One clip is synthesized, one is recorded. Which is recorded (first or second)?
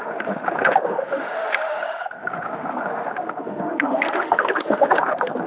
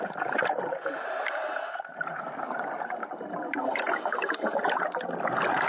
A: second